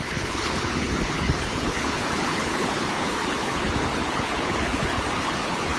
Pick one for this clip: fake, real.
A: fake